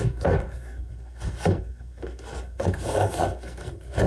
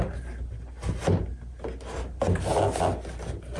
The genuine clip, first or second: second